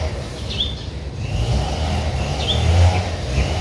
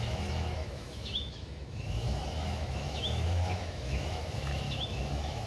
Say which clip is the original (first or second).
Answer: first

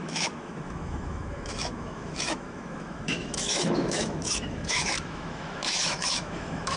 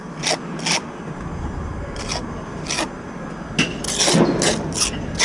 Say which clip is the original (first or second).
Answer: second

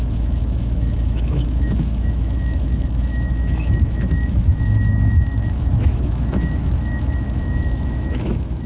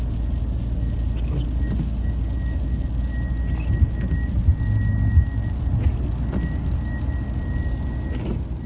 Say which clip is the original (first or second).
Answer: second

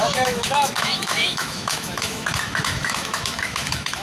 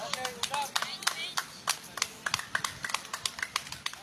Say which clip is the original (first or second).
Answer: second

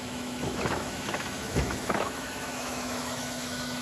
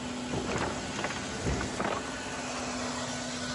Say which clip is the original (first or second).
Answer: second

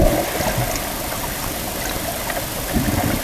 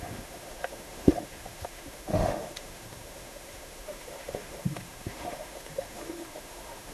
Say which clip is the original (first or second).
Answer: first